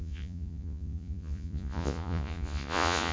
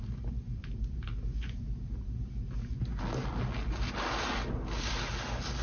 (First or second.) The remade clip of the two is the first